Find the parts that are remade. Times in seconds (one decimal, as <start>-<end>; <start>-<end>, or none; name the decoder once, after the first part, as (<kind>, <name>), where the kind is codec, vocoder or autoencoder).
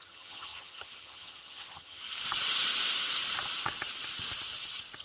0.0-2.0 (vocoder, HiFi-GAN)